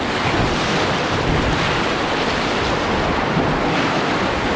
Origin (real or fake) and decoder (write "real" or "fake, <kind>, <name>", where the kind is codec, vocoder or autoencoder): real